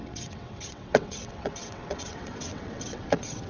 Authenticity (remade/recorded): remade